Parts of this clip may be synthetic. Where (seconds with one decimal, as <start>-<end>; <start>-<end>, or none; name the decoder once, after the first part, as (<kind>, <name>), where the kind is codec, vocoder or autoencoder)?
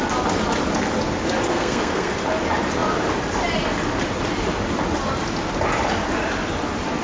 1.5-2.1 (codec, SNAC)